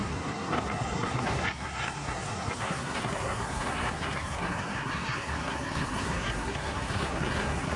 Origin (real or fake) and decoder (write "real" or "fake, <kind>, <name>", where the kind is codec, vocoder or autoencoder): fake, codec, SNAC